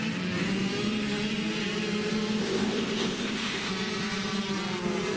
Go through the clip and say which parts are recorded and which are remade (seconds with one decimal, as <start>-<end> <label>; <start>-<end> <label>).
0.0-2.4 recorded; 2.4-3.7 remade; 3.7-5.2 recorded

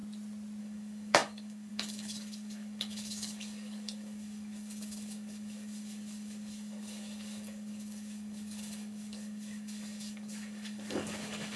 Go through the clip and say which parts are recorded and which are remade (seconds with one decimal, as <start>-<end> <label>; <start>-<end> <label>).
0.0-0.6 recorded; 0.6-11.6 remade

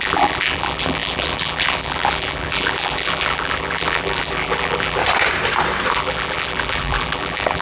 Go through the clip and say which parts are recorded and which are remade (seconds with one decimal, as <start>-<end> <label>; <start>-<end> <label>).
0.0-5.0 remade; 5.0-5.9 recorded; 5.9-7.6 remade

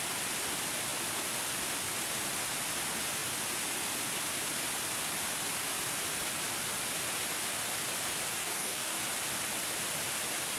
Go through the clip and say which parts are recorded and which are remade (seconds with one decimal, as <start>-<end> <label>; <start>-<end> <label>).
0.0-8.4 recorded; 8.4-9.0 remade; 9.0-10.6 recorded